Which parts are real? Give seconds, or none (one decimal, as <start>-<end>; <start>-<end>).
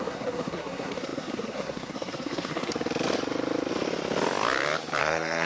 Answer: 2.7-5.0